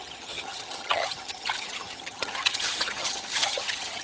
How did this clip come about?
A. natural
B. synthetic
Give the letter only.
B